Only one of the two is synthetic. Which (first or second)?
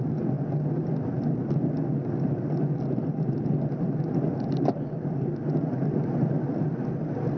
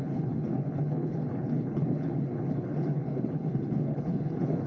second